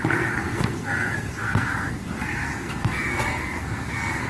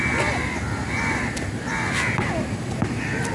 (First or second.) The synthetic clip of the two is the first